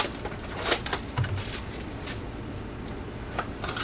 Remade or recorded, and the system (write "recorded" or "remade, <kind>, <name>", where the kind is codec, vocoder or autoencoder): recorded